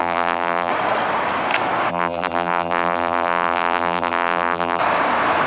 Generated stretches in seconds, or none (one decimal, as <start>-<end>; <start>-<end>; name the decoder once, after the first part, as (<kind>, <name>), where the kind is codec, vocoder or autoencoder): 0.0-0.7 (vocoder, BigVGAN v2); 1.9-4.8

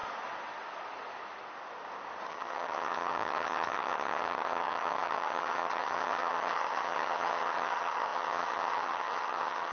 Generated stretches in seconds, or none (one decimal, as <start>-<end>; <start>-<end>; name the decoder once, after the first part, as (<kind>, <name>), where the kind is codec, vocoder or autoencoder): 2.3-9.7 (vocoder, HiFi-GAN)